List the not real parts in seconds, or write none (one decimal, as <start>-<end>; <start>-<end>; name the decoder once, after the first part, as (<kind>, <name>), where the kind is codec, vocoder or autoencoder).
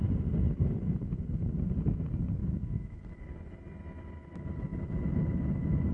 2.4-3.0 (autoencoder, DAC-VAE)